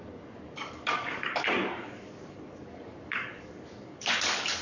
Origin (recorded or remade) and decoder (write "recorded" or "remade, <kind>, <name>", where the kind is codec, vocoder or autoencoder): remade, codec, DAC